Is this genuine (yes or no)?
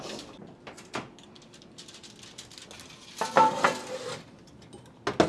yes